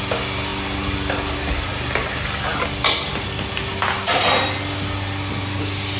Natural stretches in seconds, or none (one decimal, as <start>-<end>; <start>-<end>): 0.0-6.0